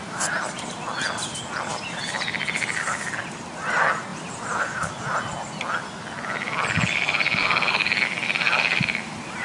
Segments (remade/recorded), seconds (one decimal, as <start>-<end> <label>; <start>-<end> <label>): 0.0-7.4 recorded; 7.4-8.0 remade; 8.0-9.4 recorded